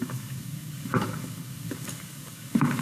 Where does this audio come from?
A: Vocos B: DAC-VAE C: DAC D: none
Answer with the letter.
C